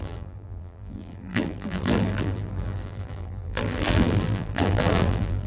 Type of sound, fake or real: fake